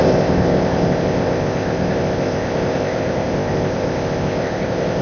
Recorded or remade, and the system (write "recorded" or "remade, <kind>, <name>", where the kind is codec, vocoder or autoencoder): remade, codec, ZipCodec